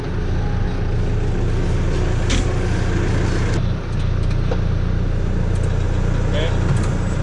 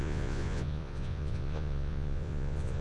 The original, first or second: first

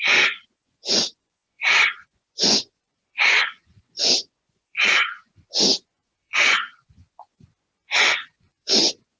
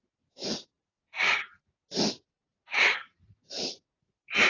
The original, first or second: second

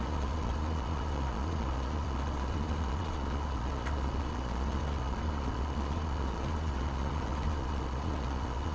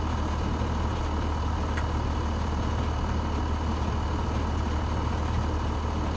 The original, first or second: second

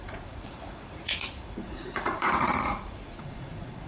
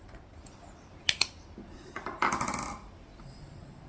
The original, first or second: second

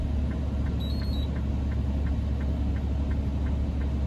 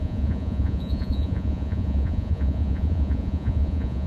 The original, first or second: first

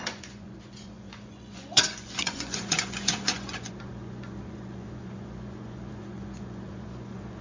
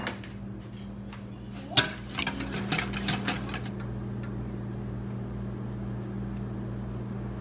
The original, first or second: second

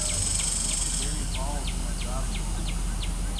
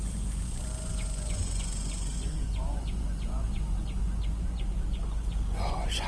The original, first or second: first